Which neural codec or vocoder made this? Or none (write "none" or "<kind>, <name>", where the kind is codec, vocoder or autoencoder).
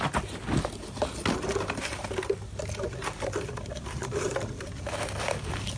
none